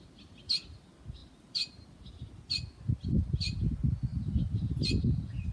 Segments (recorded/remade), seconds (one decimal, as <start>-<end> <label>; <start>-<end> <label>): 0.0-4.1 recorded; 4.1-4.7 remade; 4.7-5.5 recorded